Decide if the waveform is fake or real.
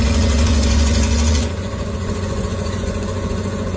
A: fake